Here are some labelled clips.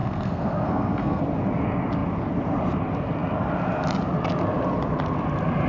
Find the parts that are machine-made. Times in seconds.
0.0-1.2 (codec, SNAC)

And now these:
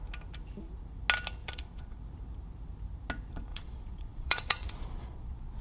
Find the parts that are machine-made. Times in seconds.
1.4-2.0 (vocoder, Vocos); 3.5-5.6

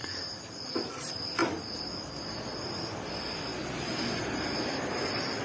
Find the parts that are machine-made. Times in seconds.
0.0-3.5 (vocoder, BigVGAN v2); 4.4-5.4

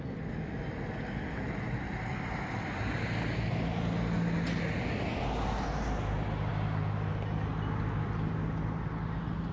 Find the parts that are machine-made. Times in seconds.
none

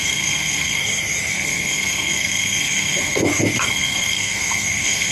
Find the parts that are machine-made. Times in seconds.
0.0-0.8 (codec, SNAC); 1.3-3.2; 3.7-5.1